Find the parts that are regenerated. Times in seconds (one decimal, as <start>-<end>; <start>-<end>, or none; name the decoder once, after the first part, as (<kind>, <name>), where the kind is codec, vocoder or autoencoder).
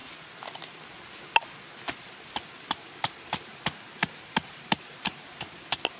4.0-5.5 (vocoder, BigVGAN v2)